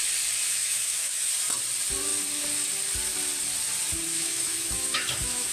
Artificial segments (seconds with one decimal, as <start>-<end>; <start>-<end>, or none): 0.6-1.3; 4.1-5.5